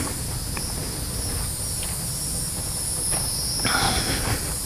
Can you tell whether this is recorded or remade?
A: remade